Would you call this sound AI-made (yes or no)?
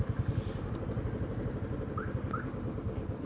no